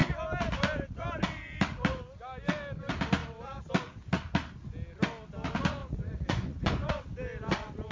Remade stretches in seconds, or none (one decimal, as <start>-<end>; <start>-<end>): 5.8-6.9